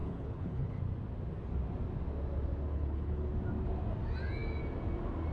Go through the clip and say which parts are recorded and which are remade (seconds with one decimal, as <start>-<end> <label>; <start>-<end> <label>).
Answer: 0.0-0.8 remade; 0.8-2.7 recorded; 2.7-3.3 remade; 3.3-5.3 recorded